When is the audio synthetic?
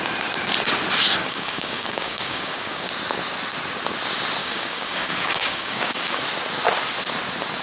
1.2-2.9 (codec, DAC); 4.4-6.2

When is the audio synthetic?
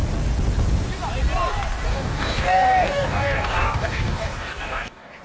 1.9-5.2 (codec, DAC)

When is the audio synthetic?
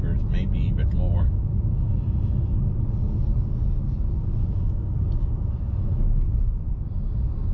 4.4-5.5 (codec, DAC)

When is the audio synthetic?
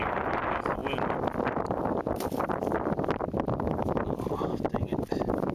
none